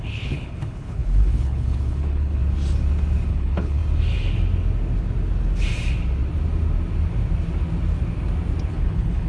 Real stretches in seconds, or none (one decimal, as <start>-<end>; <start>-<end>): 2.4-3.3; 3.8-8.7